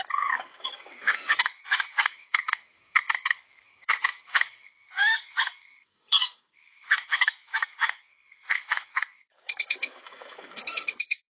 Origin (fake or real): fake